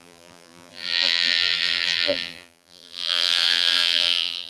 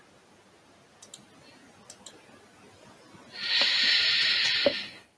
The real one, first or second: second